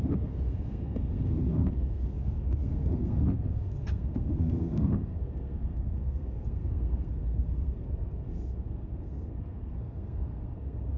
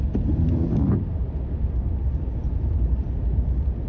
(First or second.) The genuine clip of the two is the second